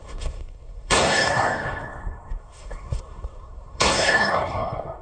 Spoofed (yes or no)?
yes